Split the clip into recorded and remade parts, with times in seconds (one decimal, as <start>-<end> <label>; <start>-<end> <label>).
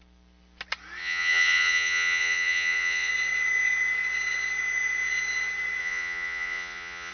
0.0-1.0 recorded; 1.0-3.1 remade; 3.1-5.8 recorded; 5.8-7.1 remade